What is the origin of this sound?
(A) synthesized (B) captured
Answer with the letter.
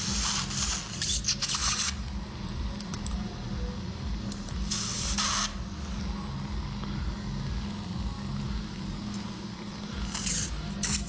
B